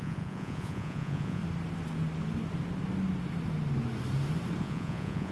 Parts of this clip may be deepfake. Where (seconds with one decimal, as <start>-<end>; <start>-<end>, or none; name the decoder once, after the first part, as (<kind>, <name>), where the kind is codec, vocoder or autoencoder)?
0.0-1.4 (vocoder, Vocos); 4.6-5.3